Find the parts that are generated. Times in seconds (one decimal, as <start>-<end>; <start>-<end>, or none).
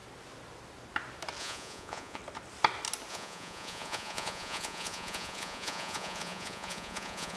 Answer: 1.4-2.2; 3.1-7.4